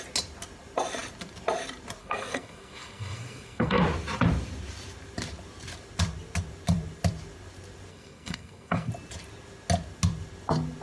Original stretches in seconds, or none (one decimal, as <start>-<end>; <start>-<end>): 0.0-2.0; 3.8-7.9; 8.9-10.8